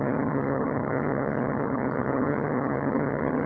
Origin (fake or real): fake